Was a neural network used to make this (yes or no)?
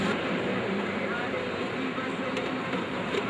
yes